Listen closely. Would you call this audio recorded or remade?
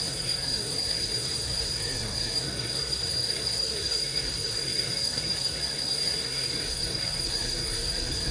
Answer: remade